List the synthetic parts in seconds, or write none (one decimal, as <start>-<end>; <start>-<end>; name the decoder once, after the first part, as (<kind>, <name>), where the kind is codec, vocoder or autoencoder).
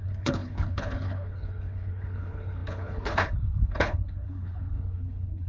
0.0-5.5 (codec, HILCodec)